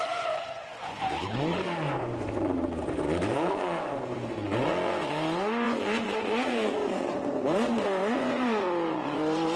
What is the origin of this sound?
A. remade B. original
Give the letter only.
A